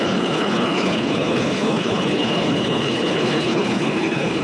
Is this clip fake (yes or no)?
yes